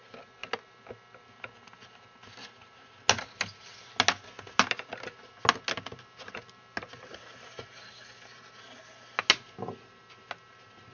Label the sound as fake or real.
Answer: real